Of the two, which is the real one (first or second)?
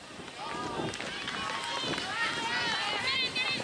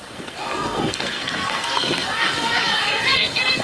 first